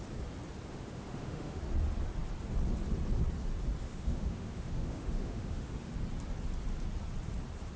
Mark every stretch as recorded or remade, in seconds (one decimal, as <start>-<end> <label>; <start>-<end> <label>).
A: 0.0-0.7 recorded; 0.7-1.6 remade; 1.6-3.8 recorded; 3.8-5.9 remade; 5.9-7.8 recorded